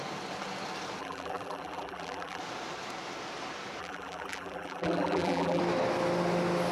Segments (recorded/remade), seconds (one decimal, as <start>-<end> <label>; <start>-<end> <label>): 0.0-1.0 recorded; 1.0-2.4 remade; 2.4-3.8 recorded; 3.8-5.6 remade; 5.6-6.7 recorded